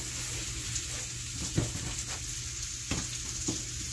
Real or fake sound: real